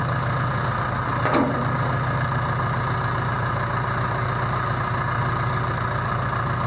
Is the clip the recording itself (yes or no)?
yes